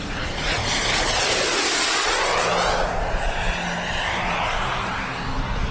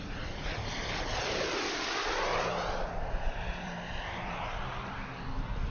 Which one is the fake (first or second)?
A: second